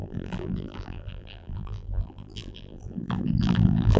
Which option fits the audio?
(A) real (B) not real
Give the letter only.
B